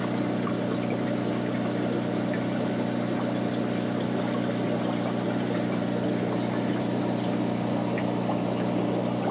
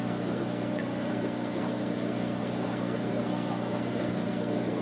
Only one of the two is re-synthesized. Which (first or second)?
second